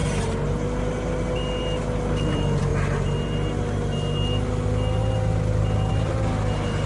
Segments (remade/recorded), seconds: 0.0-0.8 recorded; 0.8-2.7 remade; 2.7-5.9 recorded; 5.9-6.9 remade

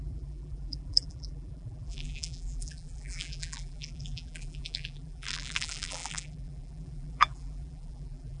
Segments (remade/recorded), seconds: 0.0-8.4 remade

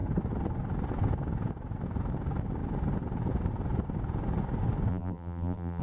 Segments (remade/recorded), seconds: 0.0-4.9 recorded; 4.9-5.8 remade

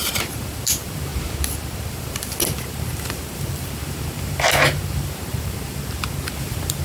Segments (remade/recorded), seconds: 0.0-1.1 remade; 1.1-1.9 recorded; 1.9-6.8 remade

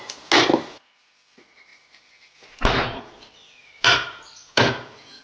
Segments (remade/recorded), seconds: 0.0-5.2 recorded

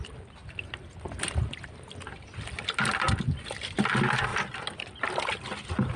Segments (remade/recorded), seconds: 0.0-6.0 recorded

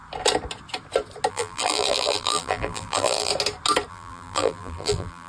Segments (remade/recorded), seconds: 0.0-1.3 recorded; 1.3-3.3 remade; 3.3-3.9 recorded; 3.9-5.3 remade